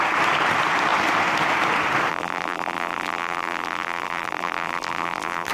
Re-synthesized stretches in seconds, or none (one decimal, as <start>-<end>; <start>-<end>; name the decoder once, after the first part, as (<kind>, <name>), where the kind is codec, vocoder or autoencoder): 2.1-5.5 (vocoder, BigVGAN v2)